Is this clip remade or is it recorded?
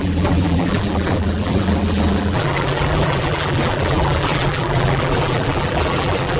remade